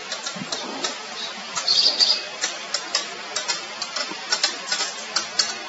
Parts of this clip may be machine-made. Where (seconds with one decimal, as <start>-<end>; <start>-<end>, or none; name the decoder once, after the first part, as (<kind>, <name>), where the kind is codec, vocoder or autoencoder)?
0.7-1.8 (vocoder, BigVGAN v2); 4.0-4.8